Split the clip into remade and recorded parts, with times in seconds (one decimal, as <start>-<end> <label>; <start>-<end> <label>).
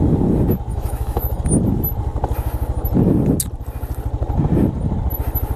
0.0-0.7 recorded; 0.7-1.4 remade; 1.4-5.6 recorded